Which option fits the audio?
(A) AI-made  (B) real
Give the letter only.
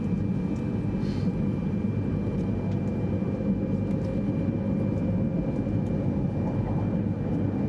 B